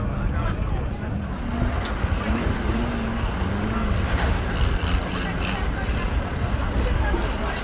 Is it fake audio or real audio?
real